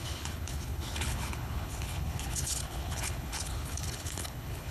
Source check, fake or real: fake